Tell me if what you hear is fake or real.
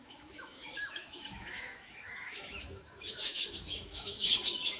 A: fake